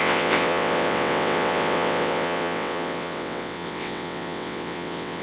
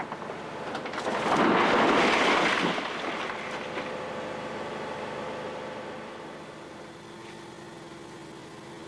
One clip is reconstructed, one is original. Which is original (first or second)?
second